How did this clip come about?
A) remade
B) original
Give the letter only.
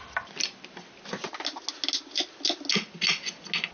B